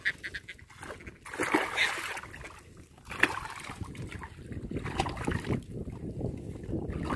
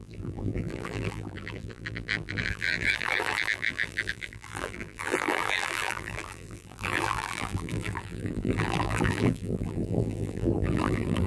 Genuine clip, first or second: first